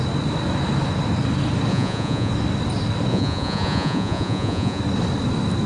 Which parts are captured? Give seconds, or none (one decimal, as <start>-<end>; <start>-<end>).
0.0-1.7; 2.3-3.1; 4.8-5.7